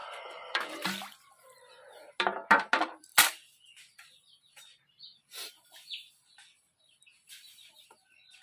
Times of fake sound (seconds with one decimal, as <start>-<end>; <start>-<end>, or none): 0.0-1.4